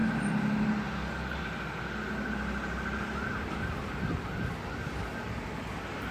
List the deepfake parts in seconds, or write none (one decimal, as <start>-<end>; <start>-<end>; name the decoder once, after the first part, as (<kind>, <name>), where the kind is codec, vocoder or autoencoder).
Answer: none